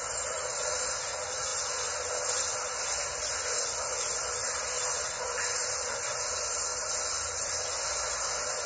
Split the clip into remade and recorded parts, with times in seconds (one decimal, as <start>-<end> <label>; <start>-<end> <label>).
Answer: 0.0-8.7 recorded